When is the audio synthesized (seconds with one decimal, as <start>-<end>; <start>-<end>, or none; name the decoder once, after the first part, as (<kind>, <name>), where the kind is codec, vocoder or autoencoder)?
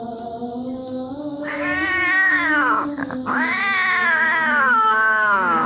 0.8-3.6 (codec, DAC); 4.0-5.7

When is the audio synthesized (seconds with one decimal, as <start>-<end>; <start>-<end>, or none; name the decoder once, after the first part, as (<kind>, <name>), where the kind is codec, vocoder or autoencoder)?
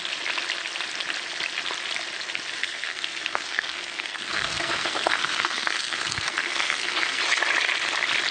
2.6-7.2 (codec, SNAC)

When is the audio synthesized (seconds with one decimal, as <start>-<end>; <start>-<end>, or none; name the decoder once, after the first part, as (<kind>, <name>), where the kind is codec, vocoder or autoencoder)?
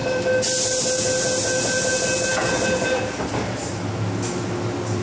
none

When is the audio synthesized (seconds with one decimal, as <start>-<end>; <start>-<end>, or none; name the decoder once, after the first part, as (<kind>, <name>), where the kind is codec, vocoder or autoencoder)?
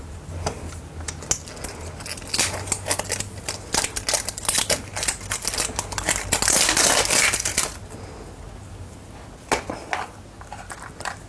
none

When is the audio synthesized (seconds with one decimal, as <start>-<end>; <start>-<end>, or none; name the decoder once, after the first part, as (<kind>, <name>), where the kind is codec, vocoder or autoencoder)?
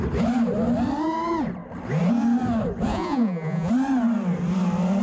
2.9-3.7 (vocoder, Vocos)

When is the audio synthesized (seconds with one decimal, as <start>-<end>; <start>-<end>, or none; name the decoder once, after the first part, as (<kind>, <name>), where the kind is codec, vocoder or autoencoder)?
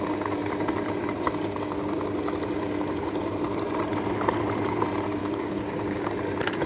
5.2-6.1 (codec, DAC)